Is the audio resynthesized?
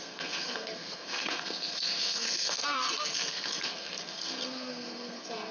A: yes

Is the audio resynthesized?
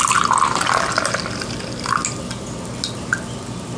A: no